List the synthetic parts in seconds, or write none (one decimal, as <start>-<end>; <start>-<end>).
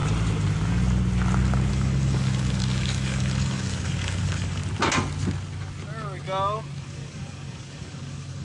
1.7-4.6; 6.8-8.4